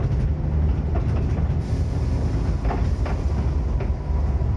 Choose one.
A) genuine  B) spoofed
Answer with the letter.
A